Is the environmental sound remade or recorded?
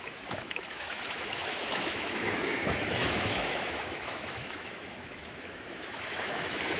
remade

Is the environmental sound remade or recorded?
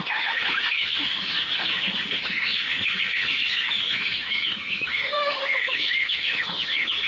remade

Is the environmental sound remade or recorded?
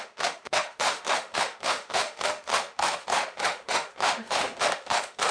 remade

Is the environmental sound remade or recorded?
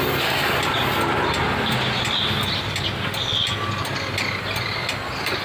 recorded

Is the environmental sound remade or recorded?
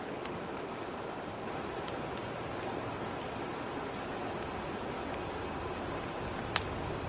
recorded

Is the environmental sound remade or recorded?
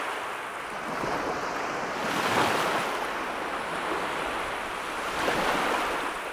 recorded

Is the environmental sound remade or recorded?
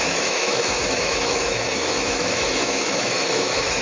remade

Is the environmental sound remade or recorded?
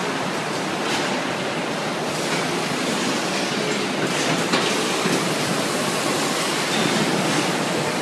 recorded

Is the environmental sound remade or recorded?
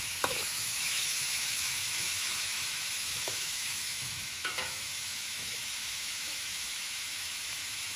remade